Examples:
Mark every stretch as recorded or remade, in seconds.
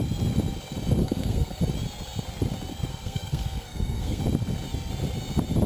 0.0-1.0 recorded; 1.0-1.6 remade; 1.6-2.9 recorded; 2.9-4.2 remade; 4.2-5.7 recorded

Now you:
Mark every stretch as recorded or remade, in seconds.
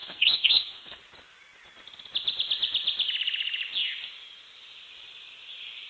0.0-1.0 remade; 1.0-5.9 recorded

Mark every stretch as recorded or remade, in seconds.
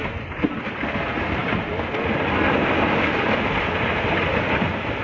0.0-5.0 recorded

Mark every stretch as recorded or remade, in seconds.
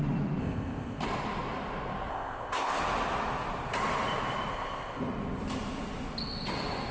0.0-0.4 recorded; 0.4-1.0 remade; 1.0-2.1 recorded; 2.1-2.8 remade; 2.8-4.5 recorded; 4.5-5.0 remade; 5.0-6.9 recorded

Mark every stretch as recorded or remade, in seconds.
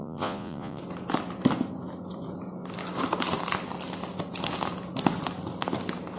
0.0-0.8 remade; 0.8-6.2 recorded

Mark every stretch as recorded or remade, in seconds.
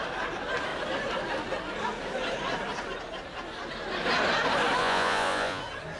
0.0-4.8 recorded; 4.8-5.6 remade; 5.6-6.0 recorded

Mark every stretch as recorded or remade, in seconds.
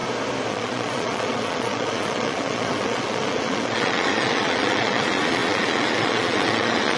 0.0-0.5 recorded; 0.5-7.0 remade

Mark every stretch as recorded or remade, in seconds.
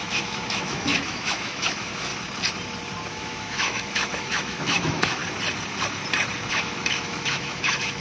0.0-2.1 remade; 2.1-3.1 recorded; 3.1-5.2 remade; 5.2-6.5 recorded; 6.5-8.0 remade